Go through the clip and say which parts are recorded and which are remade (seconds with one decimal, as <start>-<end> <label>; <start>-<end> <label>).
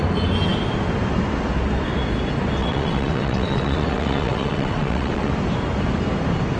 0.0-2.6 recorded; 2.6-5.3 remade; 5.3-6.6 recorded